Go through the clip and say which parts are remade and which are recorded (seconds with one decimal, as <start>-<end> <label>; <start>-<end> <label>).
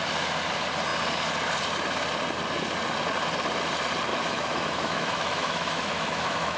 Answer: 0.0-4.1 recorded; 4.1-6.6 remade